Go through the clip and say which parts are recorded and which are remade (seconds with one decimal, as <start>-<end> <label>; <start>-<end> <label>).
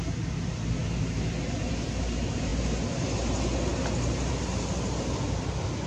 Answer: 0.0-5.9 recorded